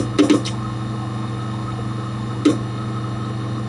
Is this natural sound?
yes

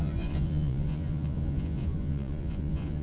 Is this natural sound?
no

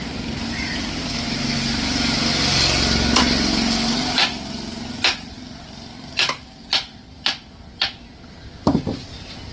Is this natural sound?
yes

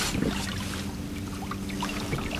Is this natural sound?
yes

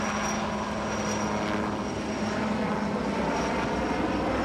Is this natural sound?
yes